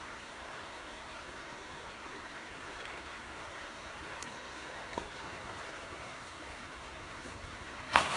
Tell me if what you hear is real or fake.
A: fake